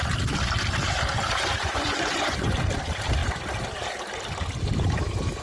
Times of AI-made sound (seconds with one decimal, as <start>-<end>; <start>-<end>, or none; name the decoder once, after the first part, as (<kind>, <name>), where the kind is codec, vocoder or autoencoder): 1.6-2.5 (vocoder, Vocos)